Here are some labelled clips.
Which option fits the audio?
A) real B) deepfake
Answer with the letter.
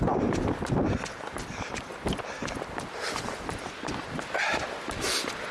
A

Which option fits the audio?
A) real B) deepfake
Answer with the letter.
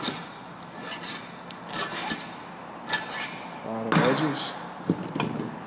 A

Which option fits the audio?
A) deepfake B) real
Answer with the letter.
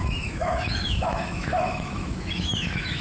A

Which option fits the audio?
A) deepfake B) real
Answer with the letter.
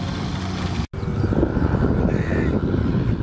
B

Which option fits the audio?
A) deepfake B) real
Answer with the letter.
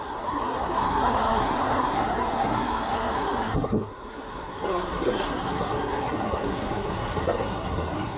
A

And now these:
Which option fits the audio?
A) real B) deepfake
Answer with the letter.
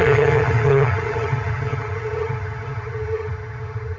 B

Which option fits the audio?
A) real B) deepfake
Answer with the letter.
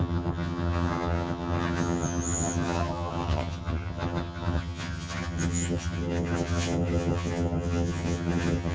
B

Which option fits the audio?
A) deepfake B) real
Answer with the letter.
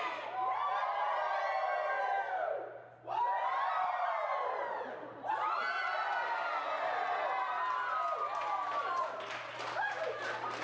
B